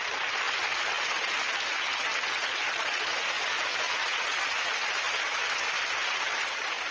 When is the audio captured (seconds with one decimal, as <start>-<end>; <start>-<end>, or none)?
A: 0.0-6.9